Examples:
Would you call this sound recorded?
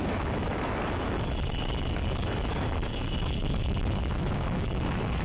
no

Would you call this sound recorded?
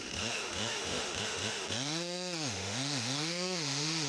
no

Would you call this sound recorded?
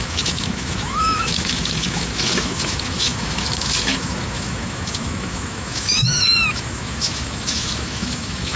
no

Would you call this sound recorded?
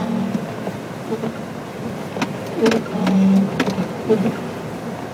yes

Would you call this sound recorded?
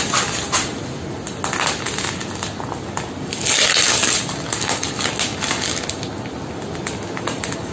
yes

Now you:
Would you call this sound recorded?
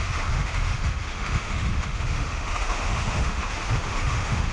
no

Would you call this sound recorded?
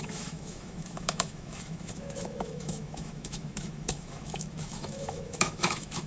no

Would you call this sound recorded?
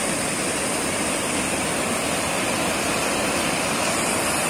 yes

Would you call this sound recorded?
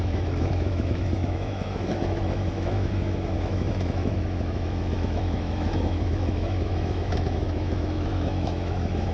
no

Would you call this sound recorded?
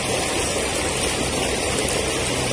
yes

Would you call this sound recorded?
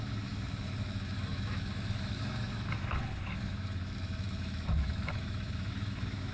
no